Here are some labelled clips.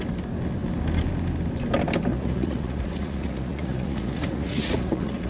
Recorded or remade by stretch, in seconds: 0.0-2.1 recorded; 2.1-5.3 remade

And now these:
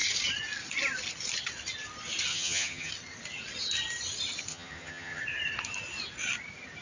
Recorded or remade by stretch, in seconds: 0.0-2.3 recorded; 2.3-2.9 remade; 2.9-4.5 recorded; 4.5-5.2 remade; 5.2-6.8 recorded

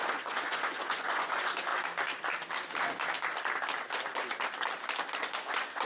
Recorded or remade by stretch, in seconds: 0.0-1.7 remade; 1.7-5.2 recorded; 5.2-5.8 remade